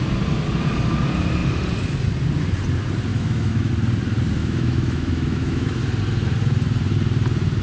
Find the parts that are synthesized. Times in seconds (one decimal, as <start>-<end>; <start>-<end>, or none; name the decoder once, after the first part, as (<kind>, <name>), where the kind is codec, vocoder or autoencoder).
3.1-3.7 (autoencoder, DAC-VAE); 4.4-5.8